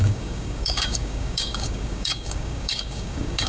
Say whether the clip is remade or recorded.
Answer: remade